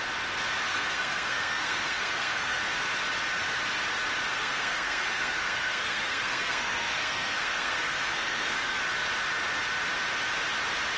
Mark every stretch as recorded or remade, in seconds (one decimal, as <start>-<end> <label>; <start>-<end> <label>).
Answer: 0.0-0.7 recorded; 0.7-2.6 remade; 2.6-4.3 recorded; 4.3-8.8 remade; 8.8-11.0 recorded